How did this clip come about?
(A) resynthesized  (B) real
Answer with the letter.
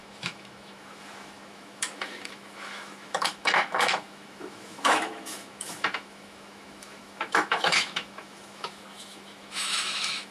A